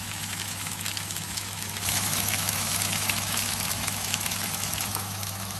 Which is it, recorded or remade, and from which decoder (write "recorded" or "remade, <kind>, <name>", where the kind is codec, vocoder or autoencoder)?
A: remade, autoencoder, DAC-VAE